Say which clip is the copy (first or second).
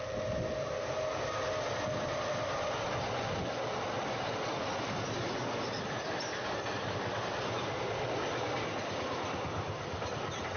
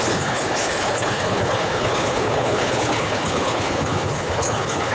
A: second